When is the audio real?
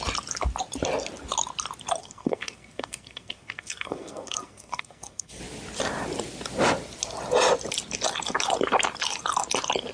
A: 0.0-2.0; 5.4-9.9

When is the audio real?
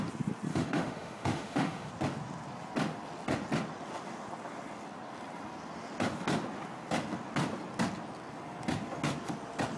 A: 0.0-0.5; 1.9-9.8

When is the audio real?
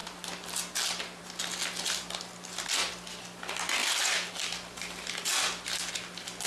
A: 0.0-3.8; 5.9-6.5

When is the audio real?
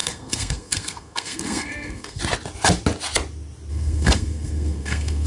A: 2.2-3.7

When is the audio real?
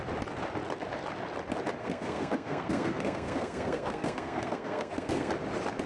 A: 0.0-1.8; 5.3-5.9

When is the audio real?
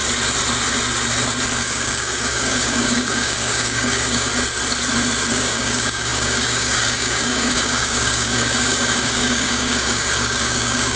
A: 0.0-1.6; 4.3-5.3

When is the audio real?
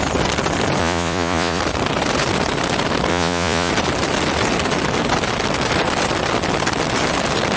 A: 0.0-0.8; 1.6-3.1; 3.7-7.6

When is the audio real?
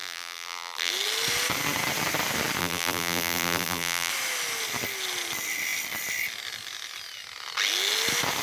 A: 0.9-2.6; 4.1-8.4